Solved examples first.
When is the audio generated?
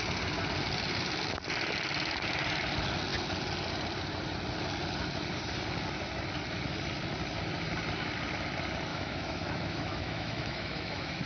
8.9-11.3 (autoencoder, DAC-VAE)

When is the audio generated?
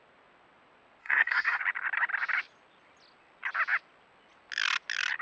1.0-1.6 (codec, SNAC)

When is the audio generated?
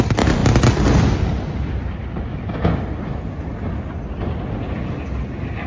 none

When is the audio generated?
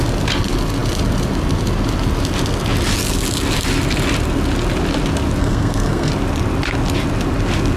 5.4-6.1 (codec, SNAC)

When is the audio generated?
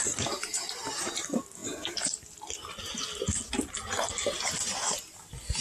none